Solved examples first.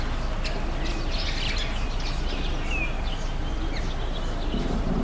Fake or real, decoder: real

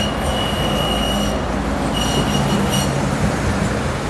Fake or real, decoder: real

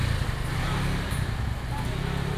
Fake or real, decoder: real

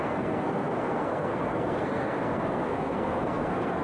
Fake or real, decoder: fake, codec, SNAC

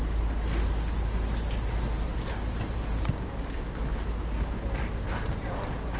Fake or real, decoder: real